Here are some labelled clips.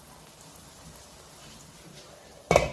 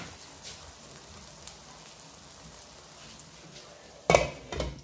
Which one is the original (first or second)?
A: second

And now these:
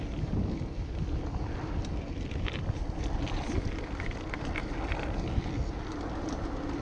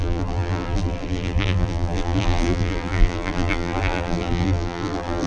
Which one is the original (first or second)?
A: first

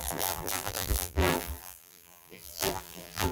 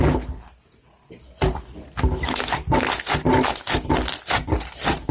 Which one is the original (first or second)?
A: second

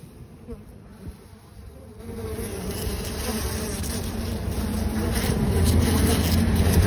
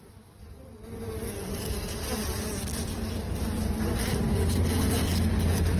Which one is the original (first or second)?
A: second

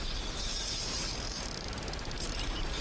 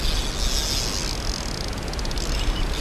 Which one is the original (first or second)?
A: second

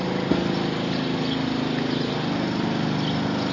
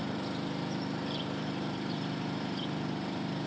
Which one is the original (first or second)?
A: first